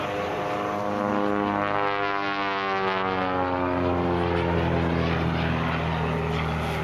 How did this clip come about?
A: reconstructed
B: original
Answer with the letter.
B